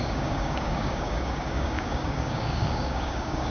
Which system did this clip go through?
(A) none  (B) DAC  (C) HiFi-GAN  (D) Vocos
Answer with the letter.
B